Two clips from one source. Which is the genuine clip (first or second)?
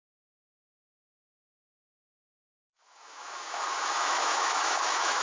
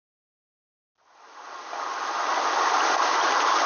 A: second